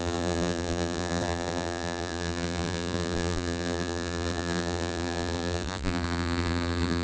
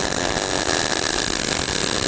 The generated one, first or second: first